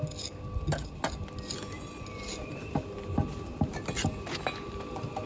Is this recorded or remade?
recorded